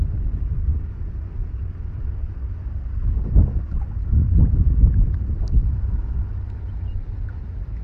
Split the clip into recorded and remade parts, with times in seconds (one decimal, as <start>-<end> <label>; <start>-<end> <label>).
0.0-7.8 recorded